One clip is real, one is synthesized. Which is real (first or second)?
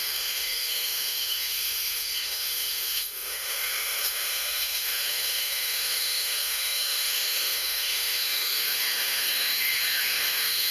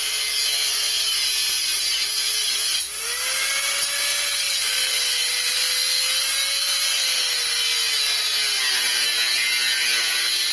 second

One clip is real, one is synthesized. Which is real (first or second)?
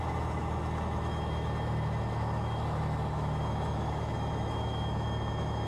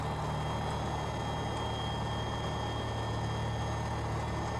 second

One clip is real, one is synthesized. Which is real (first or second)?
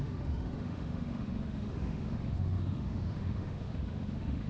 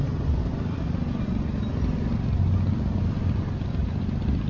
second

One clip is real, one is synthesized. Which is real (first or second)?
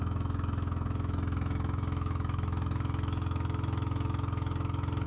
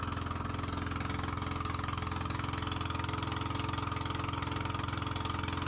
second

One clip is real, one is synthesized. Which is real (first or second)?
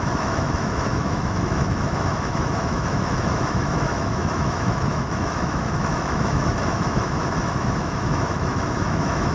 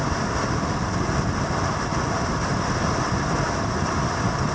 second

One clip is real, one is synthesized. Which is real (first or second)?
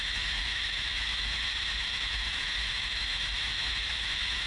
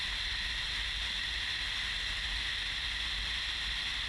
second